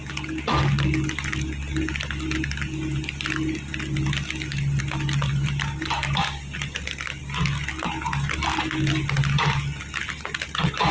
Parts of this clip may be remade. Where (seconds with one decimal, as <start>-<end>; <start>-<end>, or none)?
0.0-3.7; 4.8-7.2